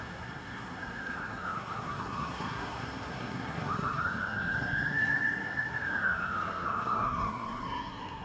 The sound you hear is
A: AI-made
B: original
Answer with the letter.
A